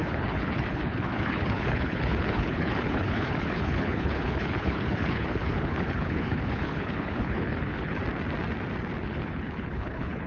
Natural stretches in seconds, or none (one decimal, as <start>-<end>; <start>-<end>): 8.0-9.0